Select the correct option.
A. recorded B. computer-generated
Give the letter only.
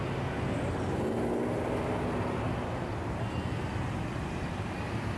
A